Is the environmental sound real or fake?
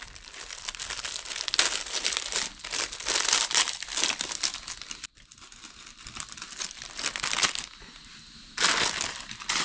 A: real